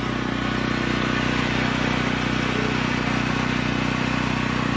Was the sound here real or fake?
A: real